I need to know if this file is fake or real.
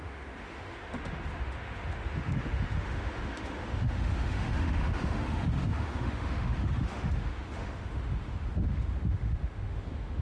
fake